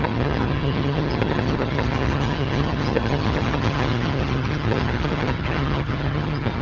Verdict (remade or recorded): remade